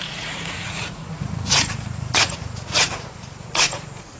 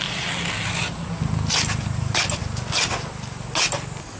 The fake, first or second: first